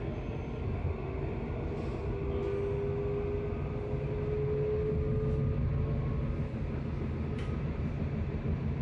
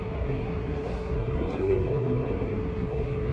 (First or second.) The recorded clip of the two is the first